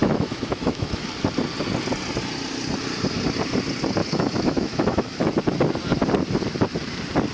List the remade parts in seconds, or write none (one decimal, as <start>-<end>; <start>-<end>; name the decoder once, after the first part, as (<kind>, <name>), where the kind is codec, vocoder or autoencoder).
0.0-1.1 (autoencoder, DAC-VAE); 4.0-5.4